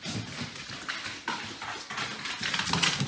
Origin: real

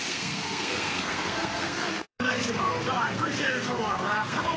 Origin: fake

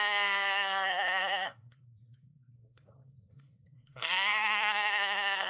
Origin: fake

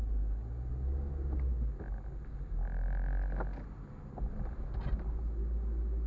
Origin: real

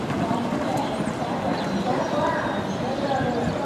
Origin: real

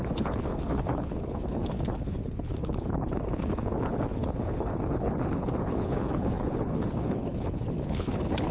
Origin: fake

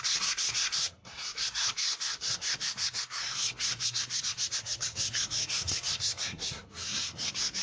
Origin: fake